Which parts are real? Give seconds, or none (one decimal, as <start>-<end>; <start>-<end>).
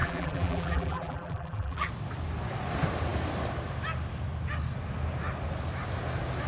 1.9-6.5